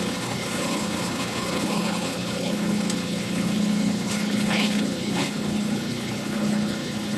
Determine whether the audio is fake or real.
fake